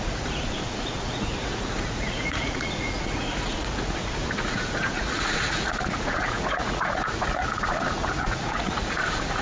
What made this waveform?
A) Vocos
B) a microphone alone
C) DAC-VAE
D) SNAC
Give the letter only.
A